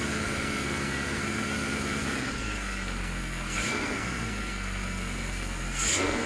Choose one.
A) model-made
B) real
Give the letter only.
A